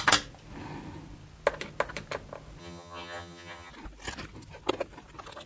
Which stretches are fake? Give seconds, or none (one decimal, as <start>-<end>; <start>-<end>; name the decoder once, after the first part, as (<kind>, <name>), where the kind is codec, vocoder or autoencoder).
2.6-3.7 (vocoder, HiFi-GAN)